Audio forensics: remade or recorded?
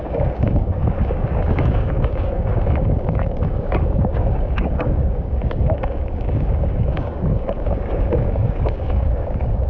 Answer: remade